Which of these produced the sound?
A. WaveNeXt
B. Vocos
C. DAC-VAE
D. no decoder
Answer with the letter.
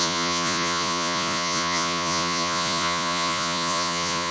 B